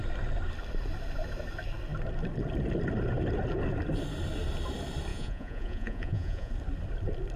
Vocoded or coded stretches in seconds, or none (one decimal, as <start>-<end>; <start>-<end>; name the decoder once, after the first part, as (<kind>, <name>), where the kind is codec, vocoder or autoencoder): 5.1-6.5 (vocoder, Vocos)